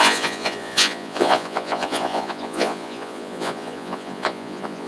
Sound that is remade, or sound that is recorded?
remade